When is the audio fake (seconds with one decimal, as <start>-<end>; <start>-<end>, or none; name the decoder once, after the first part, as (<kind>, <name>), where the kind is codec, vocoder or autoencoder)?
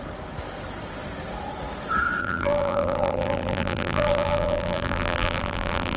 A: 2.2-6.0 (vocoder, BigVGAN v2)